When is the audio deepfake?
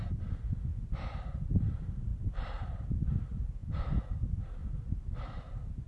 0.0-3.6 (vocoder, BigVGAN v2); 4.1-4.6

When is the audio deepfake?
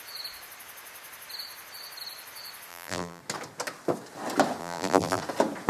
2.7-3.2 (vocoder, BigVGAN v2); 4.6-5.2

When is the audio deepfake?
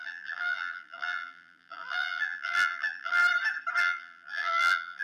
0.0-3.2 (vocoder, BigVGAN v2); 3.8-5.0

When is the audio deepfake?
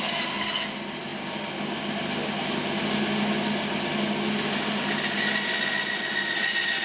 none